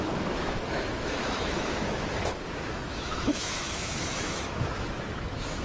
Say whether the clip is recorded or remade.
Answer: remade